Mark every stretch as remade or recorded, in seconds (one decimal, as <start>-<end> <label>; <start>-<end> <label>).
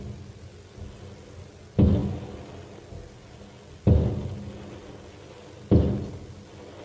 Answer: 0.0-6.8 recorded